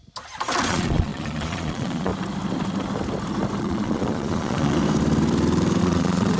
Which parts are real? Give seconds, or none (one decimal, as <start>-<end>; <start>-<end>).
0.0-0.7; 2.1-3.6; 4.8-5.8